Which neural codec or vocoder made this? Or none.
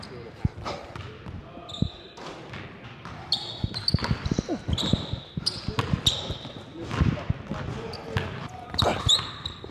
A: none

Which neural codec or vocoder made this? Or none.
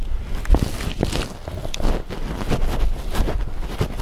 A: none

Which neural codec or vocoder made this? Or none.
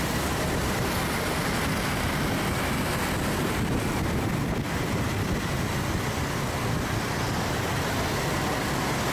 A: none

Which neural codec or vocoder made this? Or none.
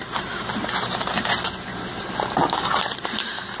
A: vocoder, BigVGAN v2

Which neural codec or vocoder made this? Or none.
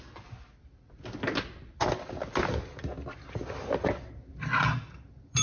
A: none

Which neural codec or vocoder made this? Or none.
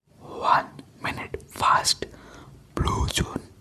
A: vocoder, BigVGAN v2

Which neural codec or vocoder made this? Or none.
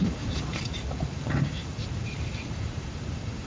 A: vocoder, BigVGAN v2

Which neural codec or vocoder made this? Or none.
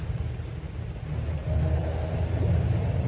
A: none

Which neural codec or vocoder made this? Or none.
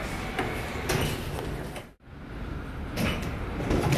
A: none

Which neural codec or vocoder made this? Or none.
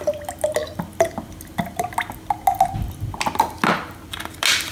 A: none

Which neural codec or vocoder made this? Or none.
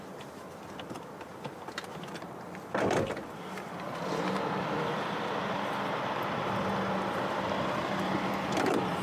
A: vocoder, BigVGAN v2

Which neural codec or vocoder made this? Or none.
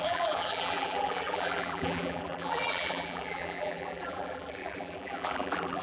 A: vocoder, BigVGAN v2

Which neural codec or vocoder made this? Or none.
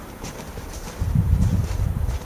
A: vocoder, BigVGAN v2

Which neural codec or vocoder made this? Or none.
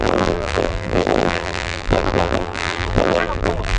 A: vocoder, BigVGAN v2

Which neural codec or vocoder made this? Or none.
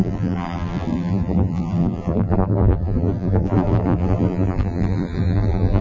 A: vocoder, BigVGAN v2